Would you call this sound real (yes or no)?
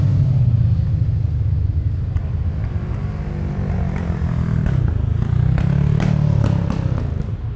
yes